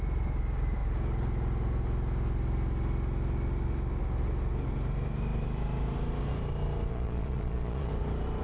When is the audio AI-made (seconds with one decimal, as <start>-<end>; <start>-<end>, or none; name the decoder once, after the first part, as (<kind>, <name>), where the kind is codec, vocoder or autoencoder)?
6.9-7.9 (vocoder, Vocos)